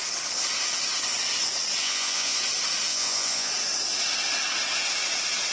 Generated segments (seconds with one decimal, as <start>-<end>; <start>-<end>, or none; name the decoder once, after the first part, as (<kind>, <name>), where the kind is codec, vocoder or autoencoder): 1.8-2.4 (vocoder, Vocos); 2.9-3.5